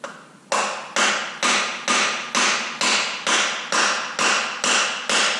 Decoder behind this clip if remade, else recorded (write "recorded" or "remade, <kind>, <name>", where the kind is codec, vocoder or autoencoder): recorded